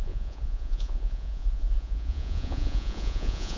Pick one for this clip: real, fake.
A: fake